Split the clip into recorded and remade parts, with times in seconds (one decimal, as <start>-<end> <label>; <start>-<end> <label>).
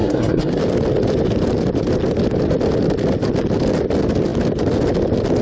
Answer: 0.0-0.6 remade; 0.6-5.4 recorded